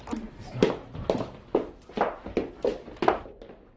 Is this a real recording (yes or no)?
yes